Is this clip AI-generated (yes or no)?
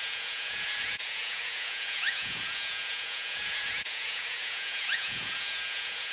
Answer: yes